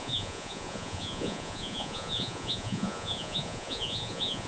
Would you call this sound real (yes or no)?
no